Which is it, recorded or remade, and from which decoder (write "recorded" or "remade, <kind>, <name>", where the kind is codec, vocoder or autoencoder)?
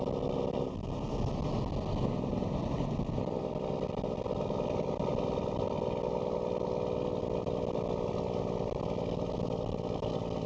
recorded